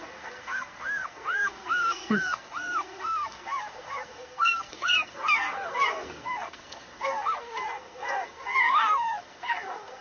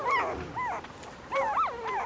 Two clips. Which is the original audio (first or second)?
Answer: second